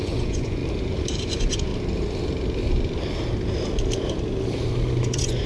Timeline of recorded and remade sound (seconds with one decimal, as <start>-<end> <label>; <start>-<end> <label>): 0.0-0.6 remade; 0.6-1.2 recorded; 1.2-1.7 remade; 1.7-5.0 recorded; 5.0-5.5 remade